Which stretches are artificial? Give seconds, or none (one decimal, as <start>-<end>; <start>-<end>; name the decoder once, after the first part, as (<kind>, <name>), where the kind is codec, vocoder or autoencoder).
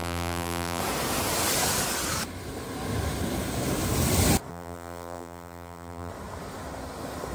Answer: 0.0-0.8 (vocoder, BigVGAN v2); 4.5-6.1